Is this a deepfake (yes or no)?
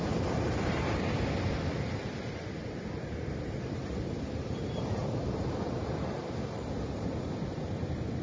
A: yes